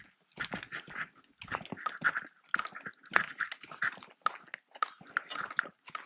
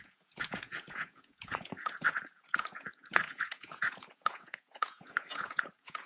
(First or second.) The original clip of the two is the first